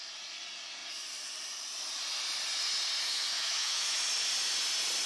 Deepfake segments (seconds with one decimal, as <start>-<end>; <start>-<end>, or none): 3.1-3.9